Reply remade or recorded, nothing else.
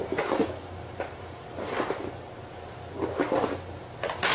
recorded